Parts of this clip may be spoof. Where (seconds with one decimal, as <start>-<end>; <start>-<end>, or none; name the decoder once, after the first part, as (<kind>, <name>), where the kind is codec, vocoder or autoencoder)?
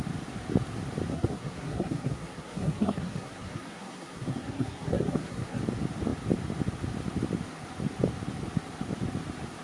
1.1-5.6 (codec, SNAC)